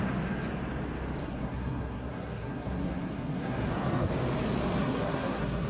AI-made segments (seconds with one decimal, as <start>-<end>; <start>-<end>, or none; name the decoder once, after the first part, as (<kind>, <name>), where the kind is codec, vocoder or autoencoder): 1.2-4.1 (codec, SNAC); 4.8-5.7